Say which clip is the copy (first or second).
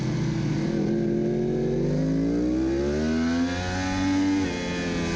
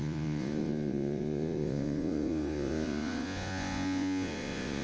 second